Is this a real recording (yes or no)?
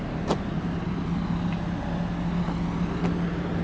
yes